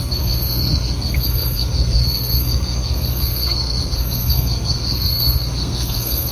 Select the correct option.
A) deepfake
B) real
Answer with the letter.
A